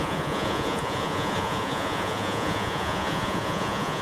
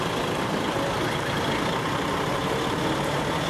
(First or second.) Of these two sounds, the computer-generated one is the first